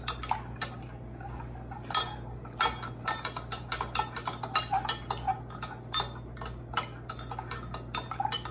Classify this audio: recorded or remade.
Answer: recorded